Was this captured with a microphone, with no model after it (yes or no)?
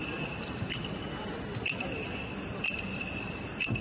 yes